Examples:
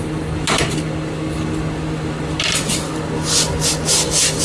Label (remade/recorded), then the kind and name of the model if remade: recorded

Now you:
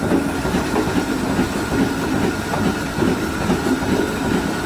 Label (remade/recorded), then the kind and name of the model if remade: recorded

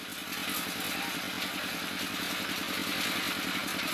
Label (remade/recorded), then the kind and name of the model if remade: recorded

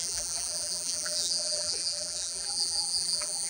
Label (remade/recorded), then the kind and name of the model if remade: remade, vocoder, BigVGAN v2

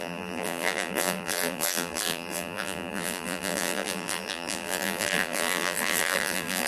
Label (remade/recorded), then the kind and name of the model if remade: remade, vocoder, BigVGAN v2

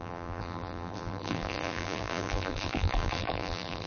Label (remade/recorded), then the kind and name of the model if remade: remade, vocoder, BigVGAN v2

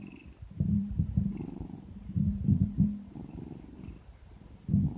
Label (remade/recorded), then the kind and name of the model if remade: remade, vocoder, BigVGAN v2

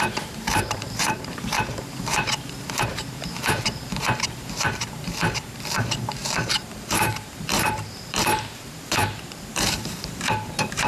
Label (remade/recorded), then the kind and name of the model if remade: remade, vocoder, BigVGAN v2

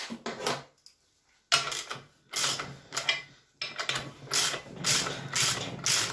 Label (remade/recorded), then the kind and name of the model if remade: recorded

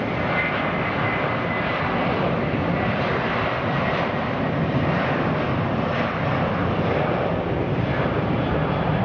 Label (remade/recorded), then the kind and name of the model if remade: remade, vocoder, BigVGAN v2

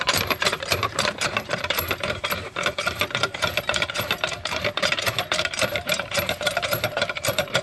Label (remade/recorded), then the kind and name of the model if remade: remade, vocoder, BigVGAN v2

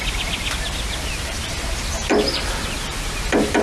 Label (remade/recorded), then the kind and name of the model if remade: recorded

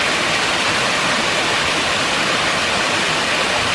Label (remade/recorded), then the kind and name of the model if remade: remade, vocoder, BigVGAN v2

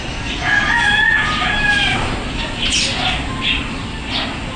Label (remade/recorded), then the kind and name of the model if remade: recorded